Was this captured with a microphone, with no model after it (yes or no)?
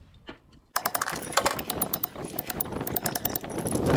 yes